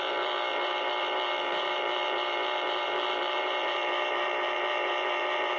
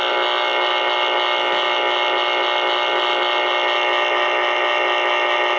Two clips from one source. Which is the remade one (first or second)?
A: first